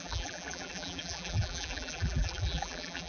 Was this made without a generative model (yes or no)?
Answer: no